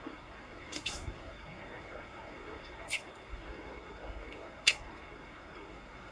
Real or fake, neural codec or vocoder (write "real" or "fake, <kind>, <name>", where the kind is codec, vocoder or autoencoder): fake, codec, SNAC